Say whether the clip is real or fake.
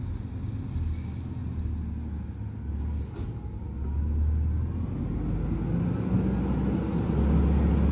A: real